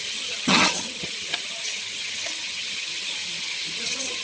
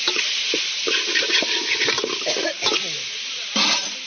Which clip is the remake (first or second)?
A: first